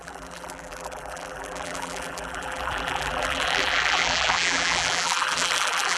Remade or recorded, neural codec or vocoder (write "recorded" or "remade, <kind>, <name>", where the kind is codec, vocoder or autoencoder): remade, vocoder, BigVGAN v2